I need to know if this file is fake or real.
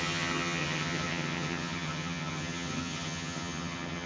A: fake